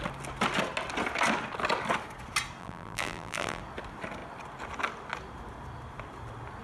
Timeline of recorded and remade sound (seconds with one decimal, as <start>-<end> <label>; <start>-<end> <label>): 0.0-2.6 recorded; 2.6-3.6 remade; 3.6-6.6 recorded